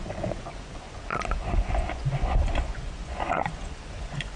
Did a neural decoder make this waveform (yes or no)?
yes